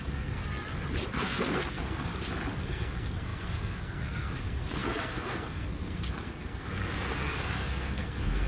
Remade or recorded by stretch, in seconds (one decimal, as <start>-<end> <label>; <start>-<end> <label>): 0.0-0.4 remade; 0.4-1.1 recorded; 1.1-2.1 remade; 2.1-2.6 recorded; 2.6-8.5 remade